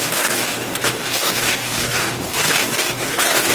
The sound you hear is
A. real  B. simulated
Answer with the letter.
B